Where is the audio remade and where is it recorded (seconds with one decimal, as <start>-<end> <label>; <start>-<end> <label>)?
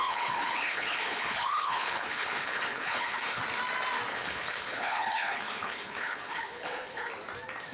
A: 0.0-3.4 remade; 3.4-4.1 recorded; 4.1-7.1 remade; 7.1-7.7 recorded